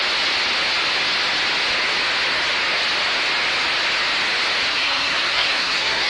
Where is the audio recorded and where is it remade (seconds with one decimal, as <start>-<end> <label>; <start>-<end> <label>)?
0.0-4.7 recorded; 4.7-6.1 remade